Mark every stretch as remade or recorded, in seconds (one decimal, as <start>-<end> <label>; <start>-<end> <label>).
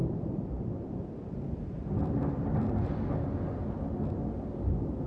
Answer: 0.0-3.1 remade; 3.1-5.1 recorded